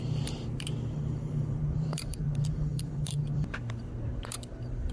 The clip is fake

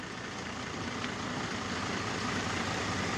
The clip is fake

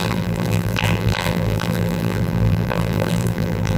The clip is fake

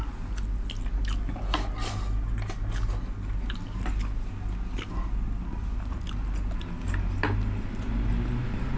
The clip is real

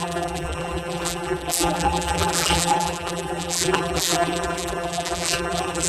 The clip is fake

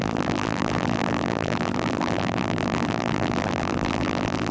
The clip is fake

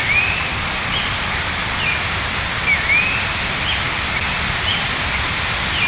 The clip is real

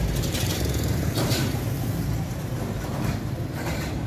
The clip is fake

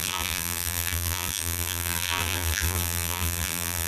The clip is fake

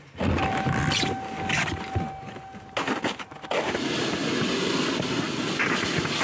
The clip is real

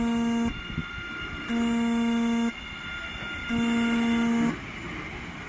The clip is real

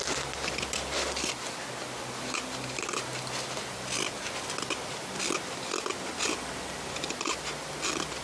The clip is real